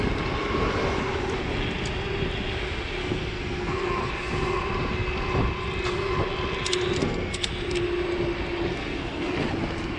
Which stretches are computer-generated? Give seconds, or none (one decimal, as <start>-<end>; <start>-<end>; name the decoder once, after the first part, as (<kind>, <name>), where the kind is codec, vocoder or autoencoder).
3.0-4.1 (codec, SNAC); 7.0-7.5; 8.7-9.3